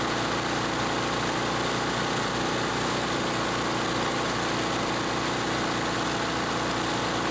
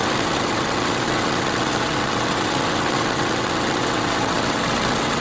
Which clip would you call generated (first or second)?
second